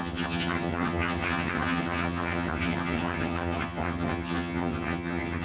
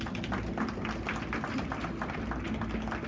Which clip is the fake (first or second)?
first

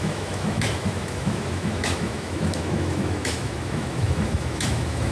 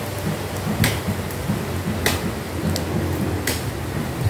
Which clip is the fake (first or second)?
first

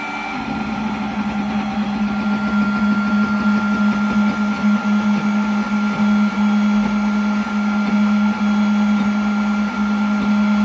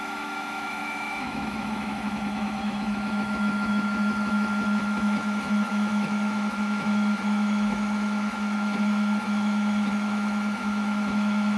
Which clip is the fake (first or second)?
second